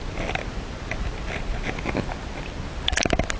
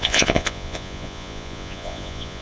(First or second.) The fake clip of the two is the second